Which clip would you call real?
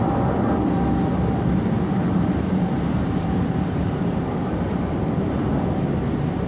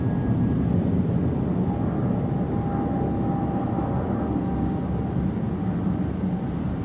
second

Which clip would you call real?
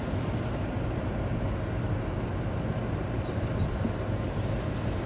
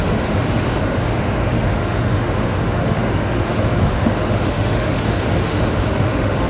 first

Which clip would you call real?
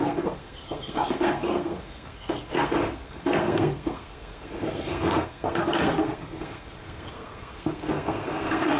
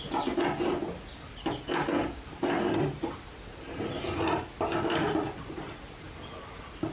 second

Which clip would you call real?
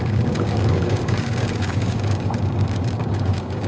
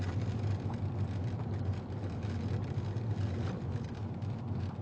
second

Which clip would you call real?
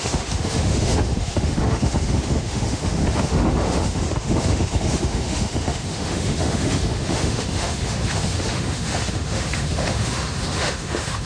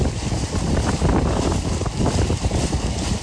second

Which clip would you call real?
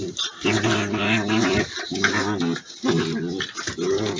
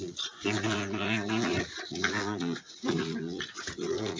first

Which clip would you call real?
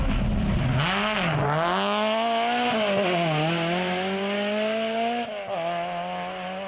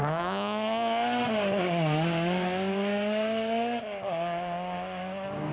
first